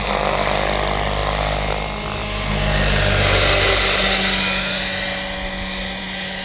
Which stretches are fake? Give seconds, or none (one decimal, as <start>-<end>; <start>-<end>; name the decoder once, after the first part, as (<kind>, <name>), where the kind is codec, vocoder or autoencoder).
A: none